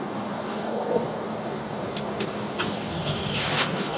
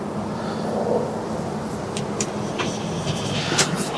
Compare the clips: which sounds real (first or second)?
second